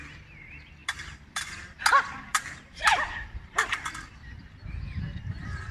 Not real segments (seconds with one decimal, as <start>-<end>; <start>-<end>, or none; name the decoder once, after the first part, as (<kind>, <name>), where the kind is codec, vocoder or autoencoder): 0.8-1.8 (vocoder, BigVGAN v2); 2.3-4.5